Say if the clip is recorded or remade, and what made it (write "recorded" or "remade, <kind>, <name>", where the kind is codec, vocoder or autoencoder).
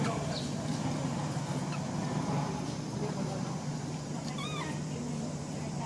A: remade, vocoder, BigVGAN v2